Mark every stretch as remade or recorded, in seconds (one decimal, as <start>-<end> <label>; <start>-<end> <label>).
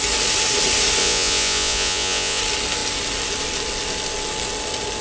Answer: 0.0-1.0 recorded; 1.0-2.4 remade; 2.4-5.0 recorded